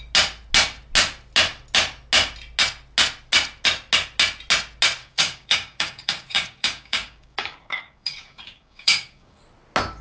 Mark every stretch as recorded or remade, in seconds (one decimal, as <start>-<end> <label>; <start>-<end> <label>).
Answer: 0.0-5.0 recorded; 5.0-9.4 remade; 9.4-10.0 recorded